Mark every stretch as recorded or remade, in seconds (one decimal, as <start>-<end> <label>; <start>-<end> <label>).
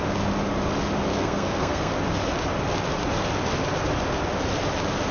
0.0-1.1 recorded; 1.1-1.9 remade; 1.9-5.1 recorded